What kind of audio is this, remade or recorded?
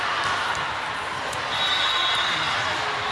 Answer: recorded